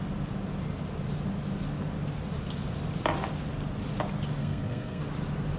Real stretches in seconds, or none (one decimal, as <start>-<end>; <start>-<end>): 0.0-4.4; 5.0-5.6